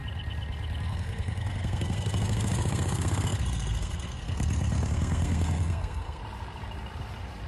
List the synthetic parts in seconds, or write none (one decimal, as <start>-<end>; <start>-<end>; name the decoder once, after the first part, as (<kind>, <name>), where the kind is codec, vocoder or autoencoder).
0.9-6.2 (codec, SNAC)